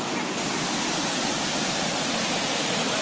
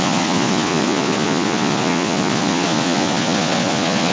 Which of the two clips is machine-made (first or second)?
second